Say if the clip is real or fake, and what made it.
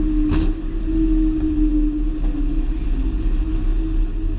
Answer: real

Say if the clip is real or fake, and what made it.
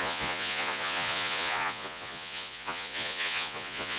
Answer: fake, vocoder, Vocos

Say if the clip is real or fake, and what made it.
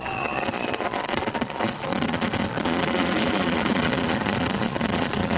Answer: fake, vocoder, Vocos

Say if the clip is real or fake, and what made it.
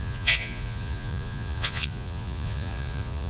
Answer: fake, vocoder, Vocos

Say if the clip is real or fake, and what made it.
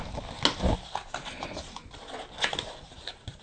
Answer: real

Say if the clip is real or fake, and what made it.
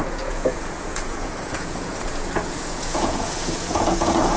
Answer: fake, vocoder, Vocos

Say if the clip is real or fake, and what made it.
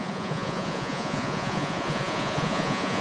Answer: fake, vocoder, Vocos